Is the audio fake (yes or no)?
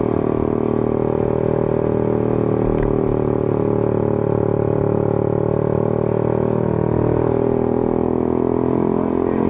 no